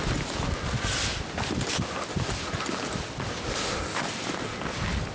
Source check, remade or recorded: recorded